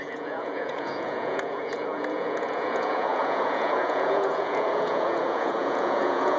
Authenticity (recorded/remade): remade